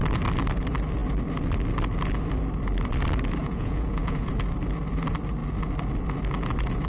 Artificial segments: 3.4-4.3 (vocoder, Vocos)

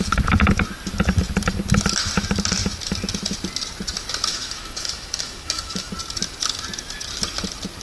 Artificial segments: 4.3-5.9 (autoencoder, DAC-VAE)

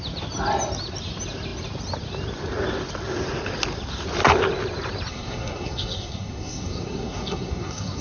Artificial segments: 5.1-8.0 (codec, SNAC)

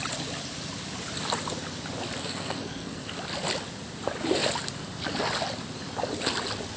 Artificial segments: 2.2-3.0 (codec, SNAC)